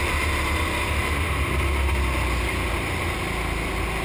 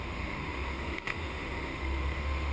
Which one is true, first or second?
first